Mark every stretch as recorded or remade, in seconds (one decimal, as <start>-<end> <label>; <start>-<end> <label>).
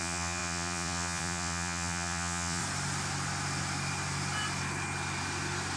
0.0-2.6 remade; 2.6-5.8 recorded